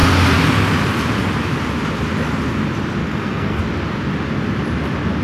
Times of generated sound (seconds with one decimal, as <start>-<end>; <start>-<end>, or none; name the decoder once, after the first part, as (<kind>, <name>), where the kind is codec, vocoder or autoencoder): 3.0-3.6 (codec, SNAC)